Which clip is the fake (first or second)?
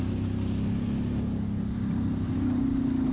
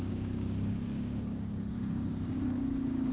second